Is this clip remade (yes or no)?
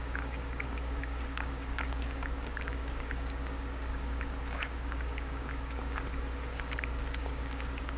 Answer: yes